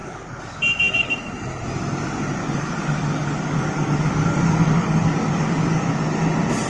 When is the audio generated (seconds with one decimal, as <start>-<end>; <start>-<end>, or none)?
0.0-0.6; 2.4-5.9